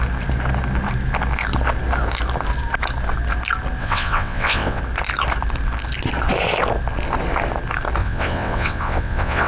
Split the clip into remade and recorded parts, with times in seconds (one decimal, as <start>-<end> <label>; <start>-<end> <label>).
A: 0.0-3.8 recorded; 3.8-4.8 remade; 4.8-8.0 recorded; 8.0-9.5 remade